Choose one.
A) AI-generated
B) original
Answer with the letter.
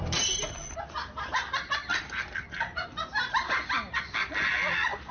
B